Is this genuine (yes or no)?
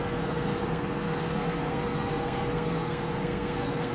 no